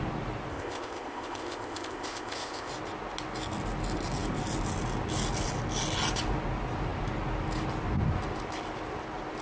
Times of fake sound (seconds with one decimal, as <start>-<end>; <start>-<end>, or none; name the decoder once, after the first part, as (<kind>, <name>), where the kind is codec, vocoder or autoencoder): 0.5-2.7 (codec, ZipCodec)